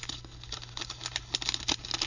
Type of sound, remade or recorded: recorded